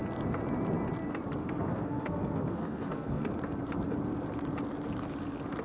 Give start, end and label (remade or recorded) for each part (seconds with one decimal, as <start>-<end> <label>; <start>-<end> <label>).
0.0-1.4 recorded; 1.4-3.3 remade; 3.3-5.6 recorded